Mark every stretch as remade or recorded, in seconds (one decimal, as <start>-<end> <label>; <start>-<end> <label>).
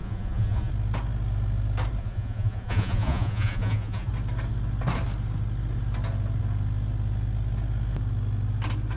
0.0-0.7 remade; 0.7-2.0 recorded; 2.0-4.1 remade; 4.1-9.0 recorded